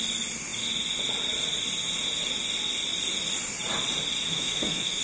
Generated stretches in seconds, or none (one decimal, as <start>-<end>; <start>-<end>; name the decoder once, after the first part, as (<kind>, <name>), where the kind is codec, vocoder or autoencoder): 4.3-5.0 (autoencoder, DAC-VAE)